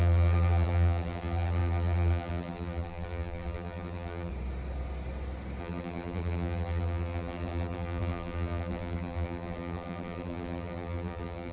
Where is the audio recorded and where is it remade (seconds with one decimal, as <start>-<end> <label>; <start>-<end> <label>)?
0.0-4.3 remade; 4.3-5.6 recorded; 5.6-11.5 remade